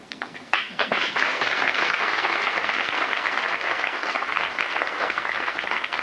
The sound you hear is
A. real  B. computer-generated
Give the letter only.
B